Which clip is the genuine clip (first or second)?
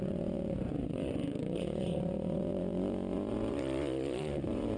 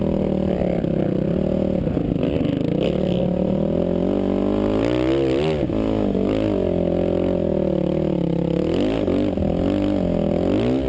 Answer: second